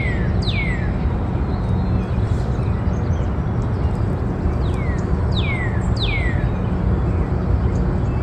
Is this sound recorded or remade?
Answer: recorded